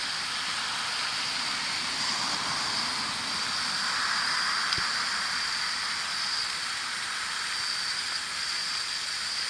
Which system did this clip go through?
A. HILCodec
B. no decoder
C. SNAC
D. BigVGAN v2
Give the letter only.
B